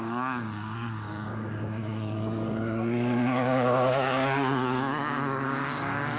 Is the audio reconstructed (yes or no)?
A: yes